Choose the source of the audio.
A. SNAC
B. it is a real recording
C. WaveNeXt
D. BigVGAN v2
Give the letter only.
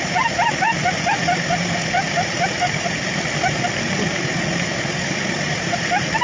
B